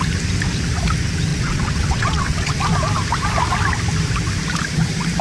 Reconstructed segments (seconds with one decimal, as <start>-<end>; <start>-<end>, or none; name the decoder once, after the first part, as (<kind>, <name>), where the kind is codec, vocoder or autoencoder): 1.3-2.6 (vocoder, WaveNeXt)